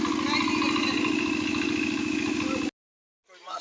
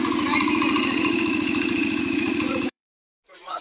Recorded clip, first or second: first